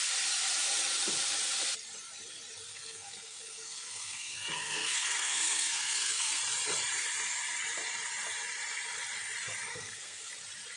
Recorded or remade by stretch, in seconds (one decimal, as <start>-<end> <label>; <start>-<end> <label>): 0.0-2.7 recorded; 2.7-6.4 remade; 6.4-9.7 recorded; 9.7-10.3 remade; 10.3-10.8 recorded